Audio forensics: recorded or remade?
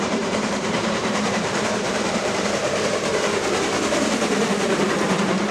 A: remade